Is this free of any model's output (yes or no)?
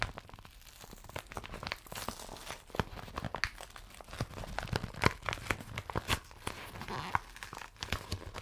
yes